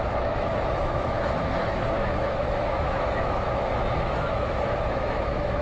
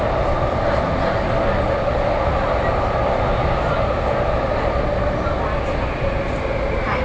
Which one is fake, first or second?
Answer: first